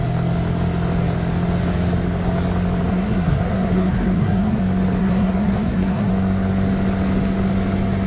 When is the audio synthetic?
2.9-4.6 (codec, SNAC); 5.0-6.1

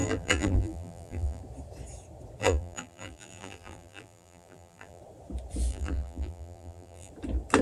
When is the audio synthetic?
0.0-1.4 (vocoder, BigVGAN v2); 2.4-5.0; 5.7-7.1

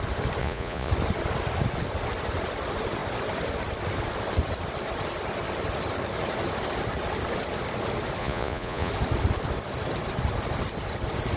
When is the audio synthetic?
0.4-0.9 (vocoder, Vocos); 8.2-8.9

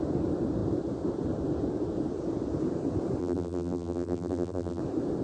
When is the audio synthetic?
3.2-4.8 (vocoder, BigVGAN v2)

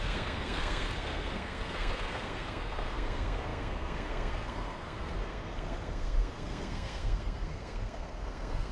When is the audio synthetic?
0.0-8.7 (codec, SNAC)

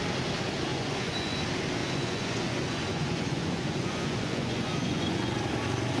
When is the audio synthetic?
0.7-1.4 (vocoder, Vocos); 1.8-5.4